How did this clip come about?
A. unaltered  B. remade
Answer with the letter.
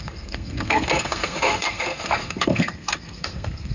B